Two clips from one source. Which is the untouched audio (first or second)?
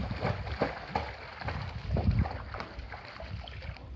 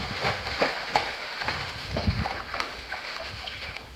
first